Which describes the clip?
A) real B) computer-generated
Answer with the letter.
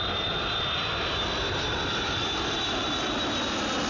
A